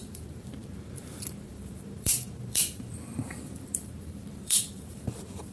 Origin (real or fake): fake